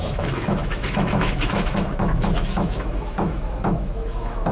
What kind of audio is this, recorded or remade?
remade